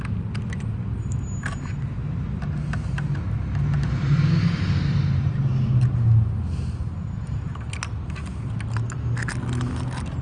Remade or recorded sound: recorded